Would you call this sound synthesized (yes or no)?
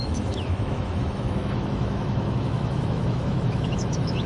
yes